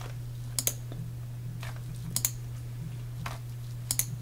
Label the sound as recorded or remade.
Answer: recorded